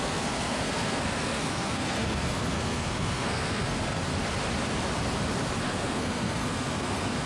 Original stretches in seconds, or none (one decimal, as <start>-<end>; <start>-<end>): 4.1-5.6